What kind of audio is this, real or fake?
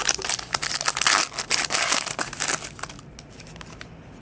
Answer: real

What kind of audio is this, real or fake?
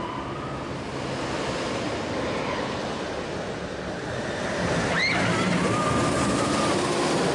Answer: real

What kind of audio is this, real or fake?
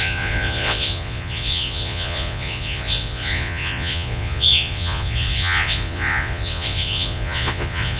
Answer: fake